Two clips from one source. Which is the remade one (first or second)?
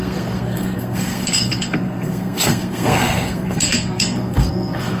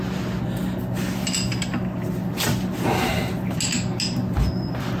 first